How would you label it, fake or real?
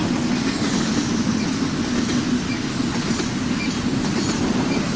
real